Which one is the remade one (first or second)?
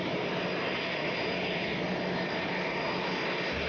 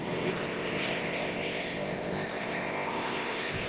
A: second